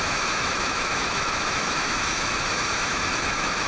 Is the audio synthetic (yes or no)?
yes